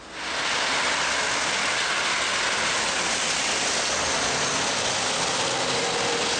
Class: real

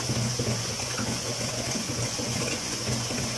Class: fake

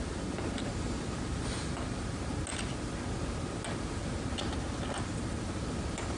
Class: real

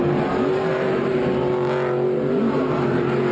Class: real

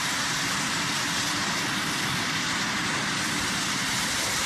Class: real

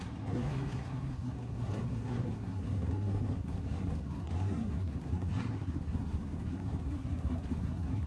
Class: fake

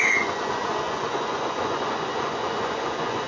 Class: fake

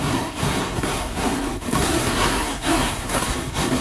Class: fake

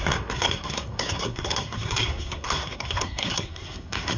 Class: fake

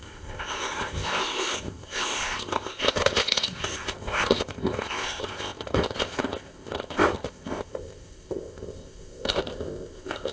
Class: fake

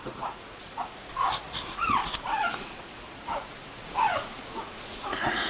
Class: fake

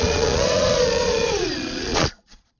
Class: fake